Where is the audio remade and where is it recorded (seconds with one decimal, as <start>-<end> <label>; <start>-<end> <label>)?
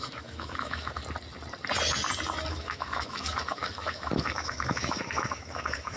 0.0-1.0 remade; 1.0-2.5 recorded; 2.5-6.0 remade